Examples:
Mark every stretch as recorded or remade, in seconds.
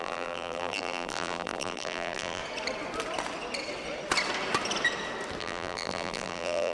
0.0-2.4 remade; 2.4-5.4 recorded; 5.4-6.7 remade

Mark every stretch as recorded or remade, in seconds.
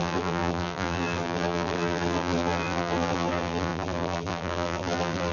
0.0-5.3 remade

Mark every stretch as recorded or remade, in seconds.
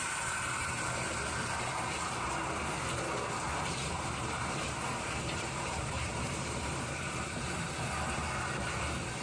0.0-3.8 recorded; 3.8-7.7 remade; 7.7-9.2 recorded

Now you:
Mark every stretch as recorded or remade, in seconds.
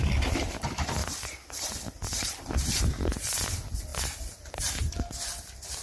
0.0-5.8 recorded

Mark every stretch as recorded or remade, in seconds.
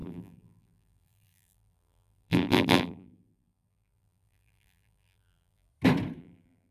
0.0-5.7 remade; 5.7-6.2 recorded; 6.2-6.7 remade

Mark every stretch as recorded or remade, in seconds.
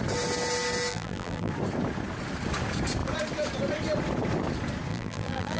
0.0-0.9 recorded; 0.9-1.5 remade; 1.5-4.9 recorded; 4.9-5.6 remade